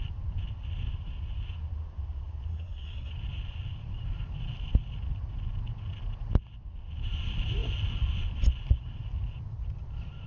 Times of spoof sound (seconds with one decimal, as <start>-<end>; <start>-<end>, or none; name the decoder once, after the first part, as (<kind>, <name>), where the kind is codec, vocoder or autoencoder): 2.5-3.1 (codec, SNAC)